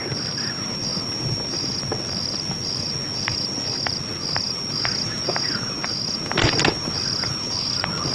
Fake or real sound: real